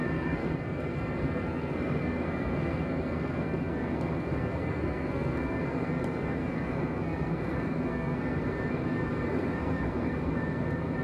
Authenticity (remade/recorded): remade